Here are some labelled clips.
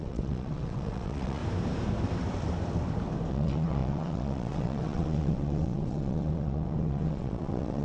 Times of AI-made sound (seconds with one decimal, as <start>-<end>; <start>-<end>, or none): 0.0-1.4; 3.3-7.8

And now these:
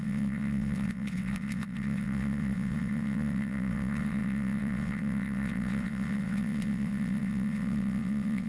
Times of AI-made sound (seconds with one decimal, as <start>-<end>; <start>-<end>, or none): 0.0-8.5

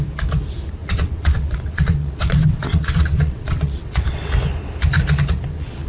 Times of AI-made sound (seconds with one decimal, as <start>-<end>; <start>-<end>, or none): 0.8-4.3

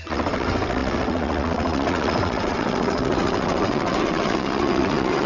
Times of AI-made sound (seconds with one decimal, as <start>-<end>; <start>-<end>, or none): 0.0-5.3